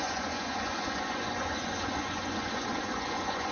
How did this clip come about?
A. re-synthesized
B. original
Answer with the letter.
A